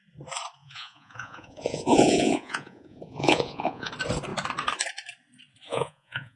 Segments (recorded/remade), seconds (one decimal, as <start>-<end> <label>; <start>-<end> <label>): 0.0-0.6 recorded; 0.6-3.9 remade; 3.9-5.7 recorded; 5.7-6.4 remade